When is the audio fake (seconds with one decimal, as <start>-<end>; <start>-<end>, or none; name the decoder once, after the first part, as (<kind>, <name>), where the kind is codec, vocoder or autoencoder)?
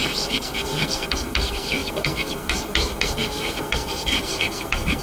0.0-5.0 (codec, SNAC)